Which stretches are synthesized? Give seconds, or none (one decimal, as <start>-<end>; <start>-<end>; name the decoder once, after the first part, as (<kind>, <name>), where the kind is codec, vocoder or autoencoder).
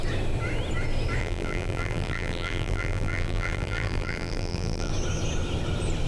1.2-4.9 (vocoder, BigVGAN v2)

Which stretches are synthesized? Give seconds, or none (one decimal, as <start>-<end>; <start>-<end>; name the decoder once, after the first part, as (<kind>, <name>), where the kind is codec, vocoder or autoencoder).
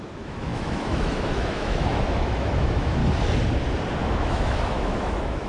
0.0-3.0 (autoencoder, DAC-VAE); 4.0-5.5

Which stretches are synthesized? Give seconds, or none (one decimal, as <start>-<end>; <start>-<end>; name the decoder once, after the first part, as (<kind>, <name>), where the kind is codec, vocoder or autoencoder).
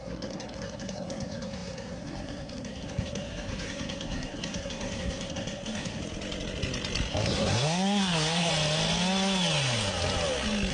0.0-6.0 (codec, SNAC); 7.1-8.5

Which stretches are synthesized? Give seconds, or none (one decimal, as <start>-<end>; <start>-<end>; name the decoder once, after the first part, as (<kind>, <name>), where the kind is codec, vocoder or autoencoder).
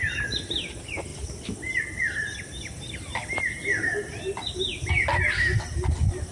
none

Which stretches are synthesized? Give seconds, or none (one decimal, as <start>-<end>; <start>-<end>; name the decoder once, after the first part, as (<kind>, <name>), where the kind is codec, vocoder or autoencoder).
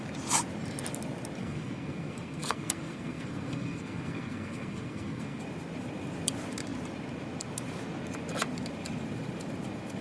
1.4-5.4 (codec, SNAC)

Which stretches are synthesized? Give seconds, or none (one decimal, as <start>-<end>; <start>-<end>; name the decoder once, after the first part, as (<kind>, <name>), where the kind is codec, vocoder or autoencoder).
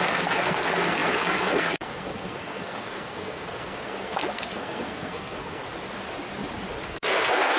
0.0-5.6 (codec, SNAC); 6.9-7.6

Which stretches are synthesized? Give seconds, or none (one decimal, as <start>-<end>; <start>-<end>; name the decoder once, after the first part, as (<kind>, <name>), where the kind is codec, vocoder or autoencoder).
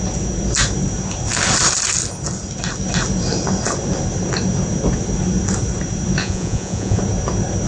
6.2-7.0 (vocoder, Vocos)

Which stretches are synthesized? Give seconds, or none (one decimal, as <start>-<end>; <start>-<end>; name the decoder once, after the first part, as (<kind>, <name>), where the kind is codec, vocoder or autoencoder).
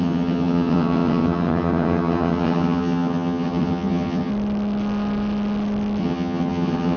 0.0-4.3 (vocoder, HiFi-GAN); 6.0-7.0